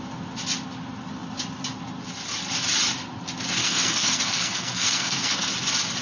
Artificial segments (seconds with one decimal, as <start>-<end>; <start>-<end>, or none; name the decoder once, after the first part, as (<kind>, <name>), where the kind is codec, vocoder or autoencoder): 3.6-5.5 (codec, SNAC)

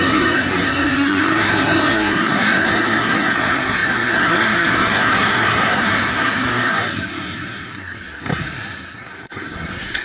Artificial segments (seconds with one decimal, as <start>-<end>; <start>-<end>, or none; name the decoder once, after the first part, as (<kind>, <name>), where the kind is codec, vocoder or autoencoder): 0.0-10.0 (codec, SNAC)

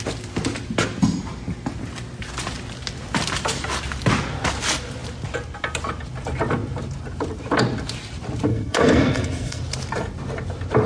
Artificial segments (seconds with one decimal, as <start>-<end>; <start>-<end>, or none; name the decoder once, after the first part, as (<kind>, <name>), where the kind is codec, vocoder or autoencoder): 8.5-9.6 (codec, SNAC)

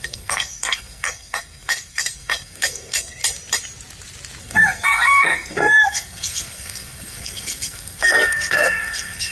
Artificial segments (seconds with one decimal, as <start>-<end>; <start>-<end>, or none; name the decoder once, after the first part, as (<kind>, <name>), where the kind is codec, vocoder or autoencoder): 0.0-3.2 (codec, SNAC); 4.4-9.3